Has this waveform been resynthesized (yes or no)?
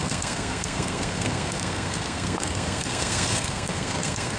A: yes